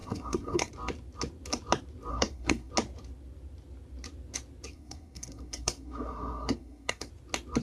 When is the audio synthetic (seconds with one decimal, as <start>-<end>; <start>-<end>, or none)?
0.0-0.7; 2.1-2.7; 4.7-7.1